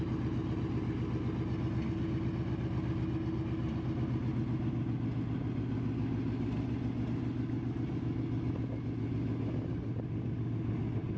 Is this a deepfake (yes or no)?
no